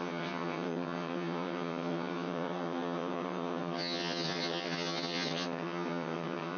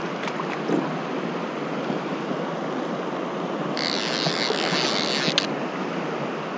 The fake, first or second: first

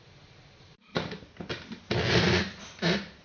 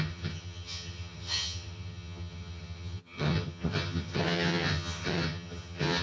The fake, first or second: second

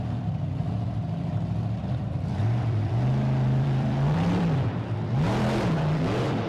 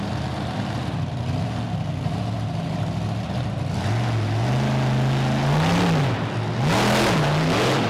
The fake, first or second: first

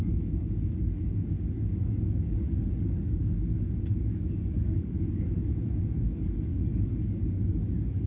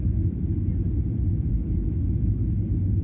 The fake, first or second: first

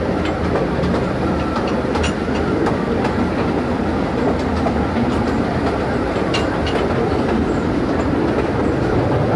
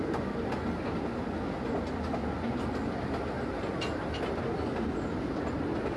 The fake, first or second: first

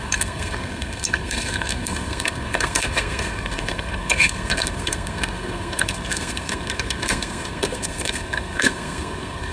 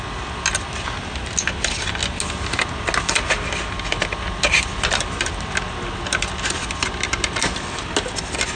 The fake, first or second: first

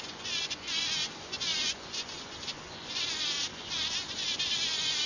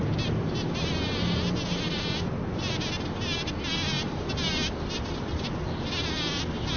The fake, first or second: first